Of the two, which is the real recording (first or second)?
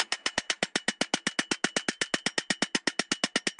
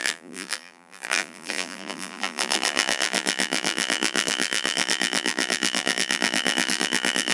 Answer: first